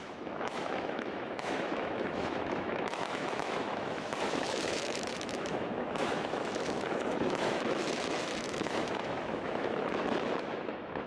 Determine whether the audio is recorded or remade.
remade